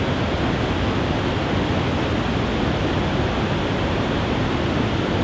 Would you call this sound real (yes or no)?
yes